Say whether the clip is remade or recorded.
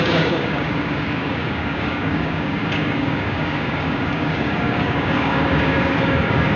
remade